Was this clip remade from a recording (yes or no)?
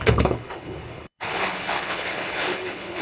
yes